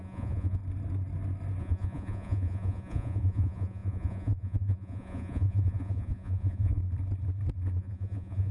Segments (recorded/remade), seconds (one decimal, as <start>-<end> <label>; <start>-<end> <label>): 0.0-0.6 remade; 0.6-1.6 recorded; 1.6-6.8 remade; 6.8-7.8 recorded; 7.8-8.5 remade